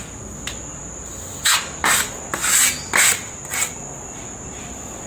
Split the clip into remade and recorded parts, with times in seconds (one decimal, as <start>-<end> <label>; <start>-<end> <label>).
0.0-5.1 recorded